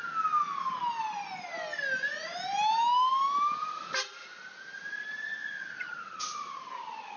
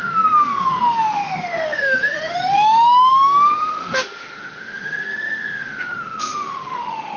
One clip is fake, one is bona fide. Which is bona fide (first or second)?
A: first